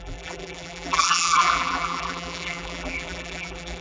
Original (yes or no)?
no